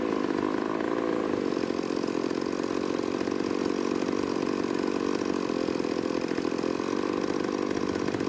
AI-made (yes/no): yes